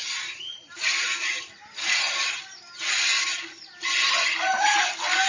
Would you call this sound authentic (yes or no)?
yes